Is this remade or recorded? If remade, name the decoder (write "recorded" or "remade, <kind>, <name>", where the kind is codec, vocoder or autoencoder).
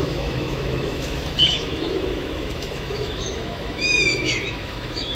remade, autoencoder, DAC-VAE